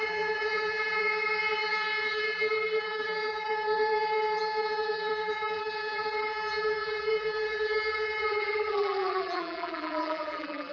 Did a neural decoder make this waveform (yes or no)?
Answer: yes